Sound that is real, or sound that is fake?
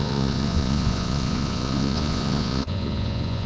fake